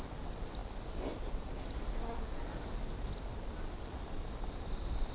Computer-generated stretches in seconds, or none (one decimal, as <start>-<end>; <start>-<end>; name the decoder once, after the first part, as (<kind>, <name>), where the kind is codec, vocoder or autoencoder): none